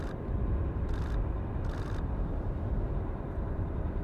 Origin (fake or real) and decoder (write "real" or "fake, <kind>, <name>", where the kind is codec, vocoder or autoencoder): fake, vocoder, BigVGAN v2